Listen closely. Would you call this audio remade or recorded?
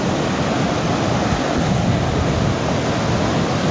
recorded